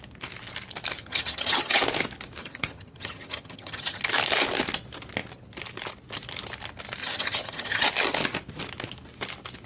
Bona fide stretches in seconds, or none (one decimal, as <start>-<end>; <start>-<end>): 0.0-1.0; 1.8-2.4; 4.0-7.0; 7.9-9.7